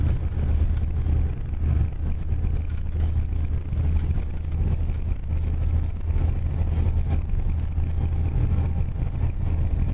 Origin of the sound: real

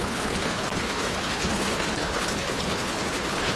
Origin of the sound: fake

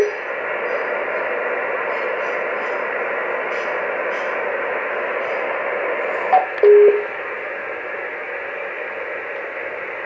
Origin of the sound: real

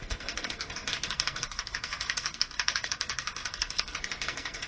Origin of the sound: fake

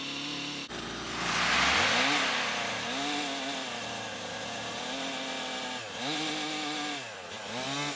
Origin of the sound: real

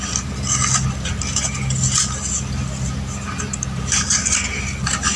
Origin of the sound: real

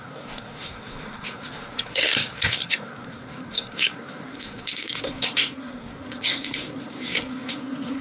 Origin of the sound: fake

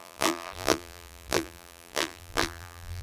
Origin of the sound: fake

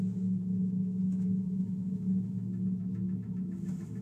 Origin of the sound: fake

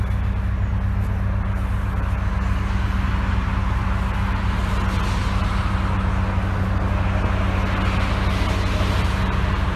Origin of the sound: real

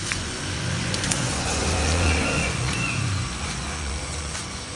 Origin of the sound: fake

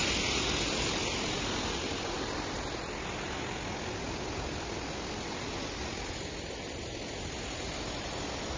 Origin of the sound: real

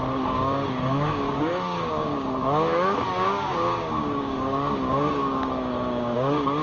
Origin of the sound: fake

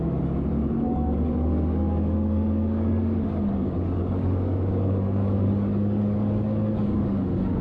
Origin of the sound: fake